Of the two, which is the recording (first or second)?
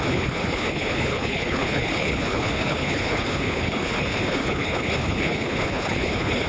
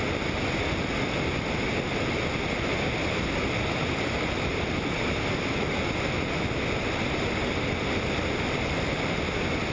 second